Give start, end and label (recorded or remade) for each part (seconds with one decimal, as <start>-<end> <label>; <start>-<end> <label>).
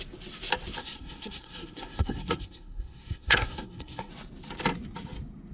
0.0-0.8 recorded; 0.8-4.1 remade; 4.1-5.5 recorded